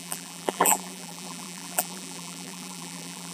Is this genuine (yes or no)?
no